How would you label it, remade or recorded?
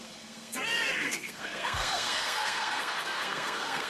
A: remade